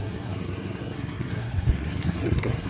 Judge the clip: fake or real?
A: fake